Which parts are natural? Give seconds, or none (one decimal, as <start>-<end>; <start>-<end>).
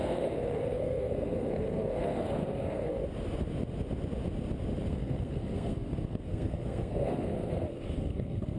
3.0-4.9